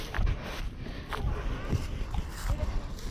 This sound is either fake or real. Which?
real